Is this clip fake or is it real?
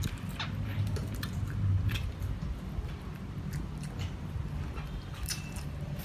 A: real